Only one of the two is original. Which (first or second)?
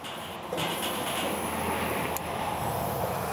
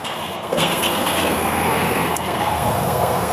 first